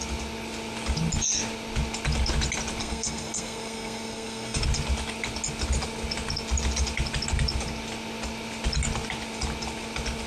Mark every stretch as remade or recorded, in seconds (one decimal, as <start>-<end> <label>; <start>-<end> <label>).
0.0-2.8 recorded; 2.8-4.6 remade; 4.6-10.3 recorded